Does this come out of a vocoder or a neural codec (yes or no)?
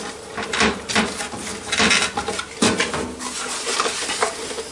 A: no